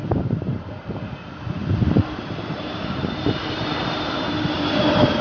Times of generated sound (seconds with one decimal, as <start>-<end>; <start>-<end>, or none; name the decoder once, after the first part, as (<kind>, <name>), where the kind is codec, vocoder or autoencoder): 0.0-0.7 (vocoder, BigVGAN v2); 1.6-4.7

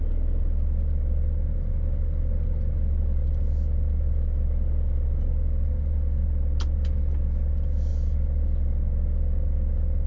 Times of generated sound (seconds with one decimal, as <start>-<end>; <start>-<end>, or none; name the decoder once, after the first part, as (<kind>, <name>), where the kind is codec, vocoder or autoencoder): none

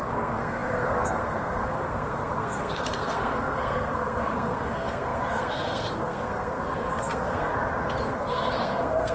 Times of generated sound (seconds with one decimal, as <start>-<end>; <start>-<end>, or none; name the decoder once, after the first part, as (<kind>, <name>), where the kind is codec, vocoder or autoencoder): 0.0-7.5 (codec, SNAC); 8.0-9.1

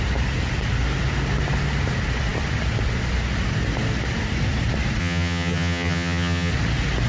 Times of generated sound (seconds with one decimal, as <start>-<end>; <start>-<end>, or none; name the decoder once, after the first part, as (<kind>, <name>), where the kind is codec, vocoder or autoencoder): 5.0-6.5 (vocoder, HiFi-GAN)

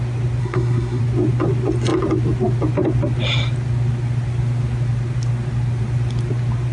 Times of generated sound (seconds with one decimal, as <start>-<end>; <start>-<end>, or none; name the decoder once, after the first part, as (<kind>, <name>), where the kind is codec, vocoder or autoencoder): 0.4-1.0 (codec, SNAC)

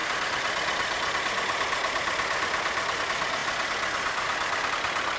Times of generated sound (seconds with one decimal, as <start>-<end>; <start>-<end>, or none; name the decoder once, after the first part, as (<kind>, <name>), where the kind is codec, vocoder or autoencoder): none

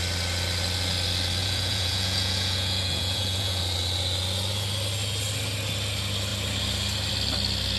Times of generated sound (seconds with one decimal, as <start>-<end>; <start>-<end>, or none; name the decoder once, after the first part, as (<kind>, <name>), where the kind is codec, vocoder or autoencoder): 1.4-3.6 (vocoder, Vocos)

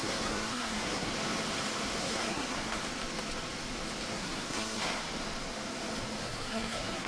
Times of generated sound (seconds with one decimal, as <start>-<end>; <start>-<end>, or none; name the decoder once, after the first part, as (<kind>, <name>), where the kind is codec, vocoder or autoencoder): 0.0-1.1 (codec, SNAC); 2.0-2.8; 4.1-5.0; 6.2-7.1